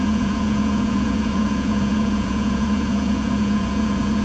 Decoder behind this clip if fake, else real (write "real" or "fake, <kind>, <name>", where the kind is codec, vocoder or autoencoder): fake, vocoder, Vocos